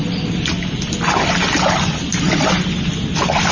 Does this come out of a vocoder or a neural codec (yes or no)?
no